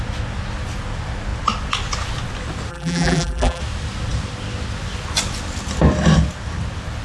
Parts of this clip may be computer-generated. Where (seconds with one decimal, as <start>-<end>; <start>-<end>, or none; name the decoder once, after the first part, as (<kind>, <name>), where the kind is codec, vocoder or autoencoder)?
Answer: 2.7-3.6 (vocoder, BigVGAN v2)